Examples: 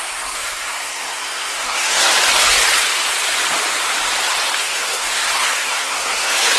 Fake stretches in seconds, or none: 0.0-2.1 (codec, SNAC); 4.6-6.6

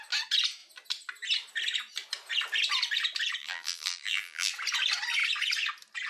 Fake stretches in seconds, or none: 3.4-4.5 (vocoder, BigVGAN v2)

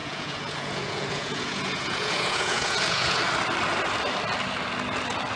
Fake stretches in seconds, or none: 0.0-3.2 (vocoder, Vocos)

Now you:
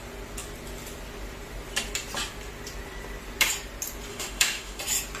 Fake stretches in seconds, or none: 4.1-4.8 (autoencoder, DAC-VAE)